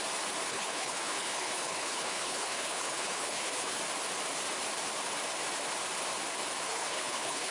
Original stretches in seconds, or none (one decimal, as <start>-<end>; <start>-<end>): 0.0-0.5; 3.8-6.7

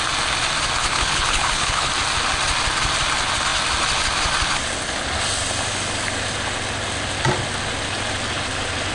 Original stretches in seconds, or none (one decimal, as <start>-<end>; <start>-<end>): 0.0-0.8; 1.9-8.9

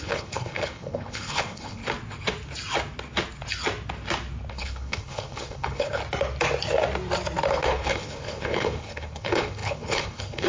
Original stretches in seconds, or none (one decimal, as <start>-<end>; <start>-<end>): 1.8-4.5; 6.0-7.5

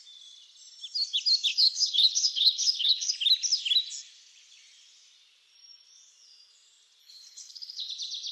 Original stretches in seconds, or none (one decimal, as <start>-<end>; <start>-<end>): 0.0-1.5; 3.1-7.0; 7.9-8.3

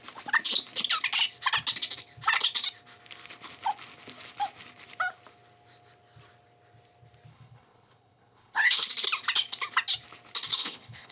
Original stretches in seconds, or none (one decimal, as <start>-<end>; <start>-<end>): 0.0-7.3; 8.9-10.5

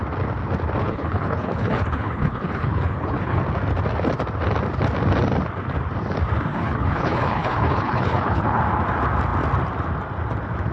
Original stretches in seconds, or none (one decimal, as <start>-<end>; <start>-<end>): 0.0-0.8; 3.4-6.5; 8.6-10.7

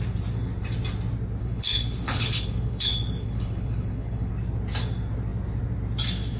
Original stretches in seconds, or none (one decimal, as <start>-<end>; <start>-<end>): 0.0-1.4; 4.3-6.4

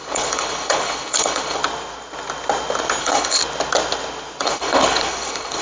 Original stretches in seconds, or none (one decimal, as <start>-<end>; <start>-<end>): 1.6-3.0; 3.4-4.4